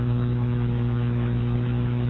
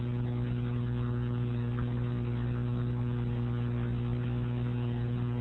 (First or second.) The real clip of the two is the second